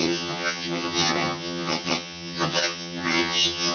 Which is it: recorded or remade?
remade